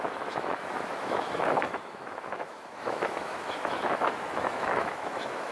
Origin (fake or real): fake